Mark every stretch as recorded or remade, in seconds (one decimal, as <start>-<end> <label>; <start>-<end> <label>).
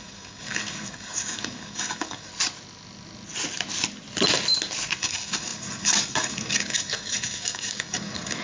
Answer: 0.0-2.3 remade; 2.3-5.0 recorded; 5.0-8.4 remade